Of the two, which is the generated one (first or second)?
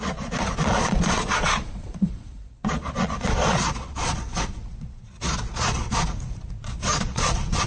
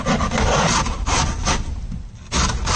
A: first